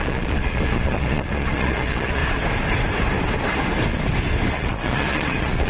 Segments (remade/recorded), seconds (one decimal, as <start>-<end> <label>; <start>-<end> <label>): 0.0-2.2 remade; 2.2-4.5 recorded; 4.5-5.7 remade